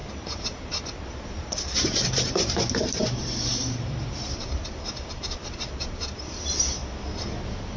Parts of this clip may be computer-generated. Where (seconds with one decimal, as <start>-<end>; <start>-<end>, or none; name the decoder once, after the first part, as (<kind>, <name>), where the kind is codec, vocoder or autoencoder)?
0.0-6.8 (vocoder, BigVGAN v2)